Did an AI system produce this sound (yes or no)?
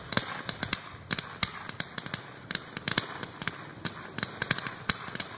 no